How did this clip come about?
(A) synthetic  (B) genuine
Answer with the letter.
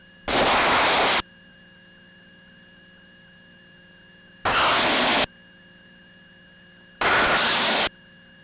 B